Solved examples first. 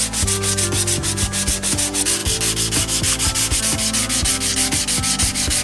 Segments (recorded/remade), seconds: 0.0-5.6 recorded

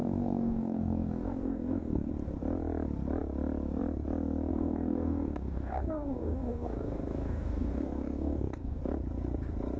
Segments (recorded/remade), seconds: 0.0-2.1 remade; 2.1-4.5 recorded; 4.5-8.8 remade; 8.8-9.8 recorded

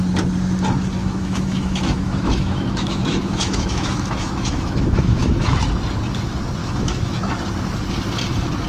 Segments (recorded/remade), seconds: 0.0-1.0 recorded; 1.0-5.6 remade; 5.6-6.6 recorded; 6.6-7.3 remade; 7.3-8.7 recorded

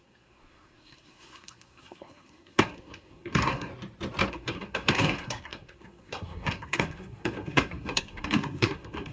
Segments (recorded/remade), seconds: 0.0-3.7 remade; 3.7-4.3 recorded; 4.3-9.1 remade

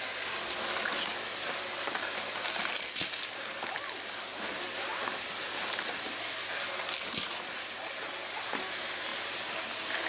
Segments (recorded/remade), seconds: 0.0-9.1 recorded; 9.1-10.1 remade